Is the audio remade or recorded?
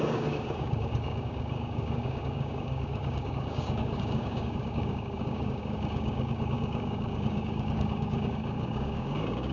remade